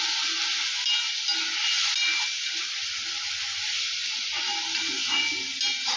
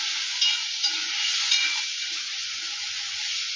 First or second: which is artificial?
second